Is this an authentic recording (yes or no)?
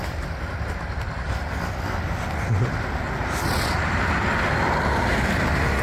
yes